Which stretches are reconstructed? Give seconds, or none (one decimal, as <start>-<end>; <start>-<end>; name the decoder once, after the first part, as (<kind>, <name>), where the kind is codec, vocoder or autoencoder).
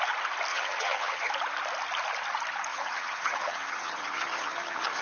0.5-1.3 (vocoder, HiFi-GAN); 2.7-5.0